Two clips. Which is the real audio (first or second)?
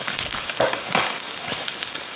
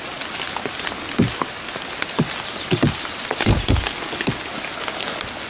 second